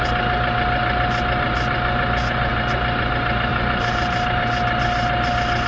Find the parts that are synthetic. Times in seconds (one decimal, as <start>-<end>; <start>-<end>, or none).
3.5-4.4